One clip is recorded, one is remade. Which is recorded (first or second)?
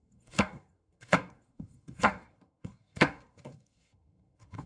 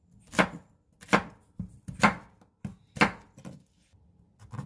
second